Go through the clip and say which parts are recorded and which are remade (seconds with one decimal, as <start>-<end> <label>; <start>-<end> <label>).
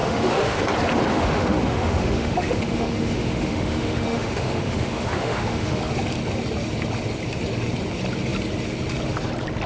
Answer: 0.0-0.6 remade; 0.6-1.1 recorded; 1.1-5.8 remade; 5.8-9.7 recorded